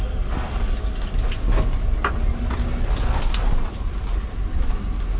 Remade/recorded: recorded